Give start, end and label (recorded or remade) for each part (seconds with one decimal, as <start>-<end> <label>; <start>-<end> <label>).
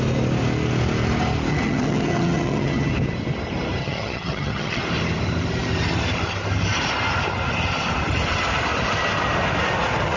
0.0-1.5 recorded; 1.5-2.9 remade; 2.9-3.8 recorded; 3.8-4.8 remade; 4.8-10.2 recorded